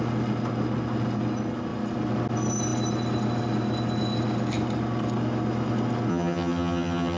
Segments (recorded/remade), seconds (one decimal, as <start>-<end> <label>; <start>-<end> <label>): 0.0-6.1 recorded; 6.1-7.2 remade